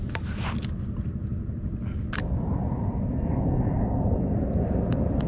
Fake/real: real